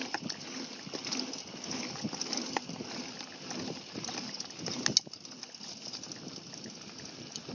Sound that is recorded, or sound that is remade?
recorded